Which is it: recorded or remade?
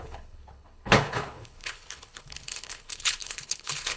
remade